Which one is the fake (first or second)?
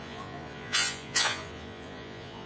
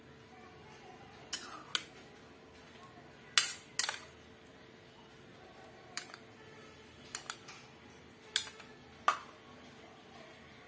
first